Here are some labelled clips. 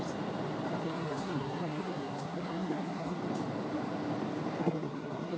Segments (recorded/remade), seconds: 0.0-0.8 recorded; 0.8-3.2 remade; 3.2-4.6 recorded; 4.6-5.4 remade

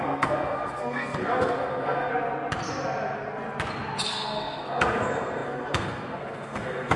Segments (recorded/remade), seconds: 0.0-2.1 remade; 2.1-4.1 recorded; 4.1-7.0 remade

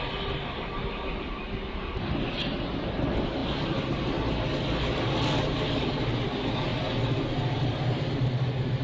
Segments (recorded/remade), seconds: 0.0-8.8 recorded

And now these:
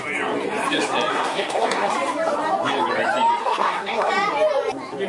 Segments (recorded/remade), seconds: 0.0-1.1 recorded; 1.1-1.9 remade; 1.9-3.4 recorded; 3.4-4.1 remade; 4.1-5.1 recorded

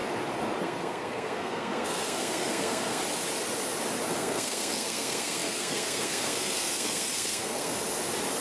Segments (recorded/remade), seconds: 0.0-0.6 recorded; 0.6-3.0 remade; 3.0-4.1 recorded; 4.1-7.7 remade; 7.7-8.4 recorded